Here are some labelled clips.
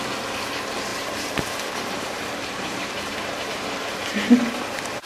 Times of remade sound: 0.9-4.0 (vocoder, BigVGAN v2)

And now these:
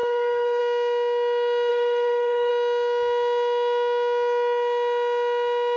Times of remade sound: 0.0-0.6 (codec, SNAC); 1.7-2.5

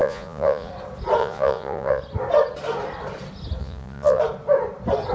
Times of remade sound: 0.0-0.7 (vocoder, Vocos); 1.2-2.0; 3.6-4.2

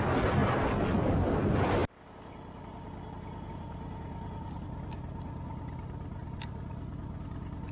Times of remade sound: none

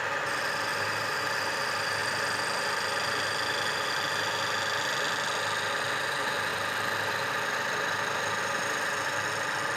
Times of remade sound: 0.7-1.2 (vocoder, BigVGAN v2)

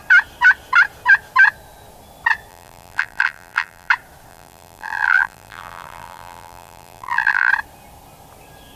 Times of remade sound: 2.5-3.9 (vocoder, BigVGAN v2); 4.3-7.5

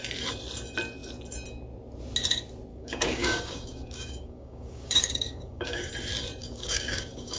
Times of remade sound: 2.7-5.9 (codec, DAC); 6.4-7.4

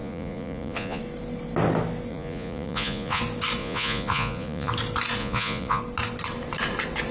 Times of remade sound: 0.0-1.0 (vocoder, Vocos); 2.1-3.2; 3.6-4.7; 5.2-5.8